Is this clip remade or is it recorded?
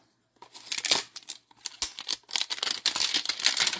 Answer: recorded